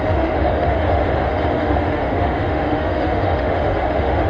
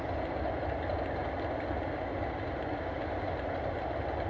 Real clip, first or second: second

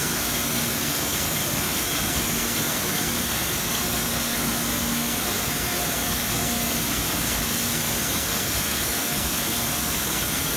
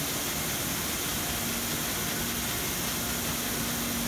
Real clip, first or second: second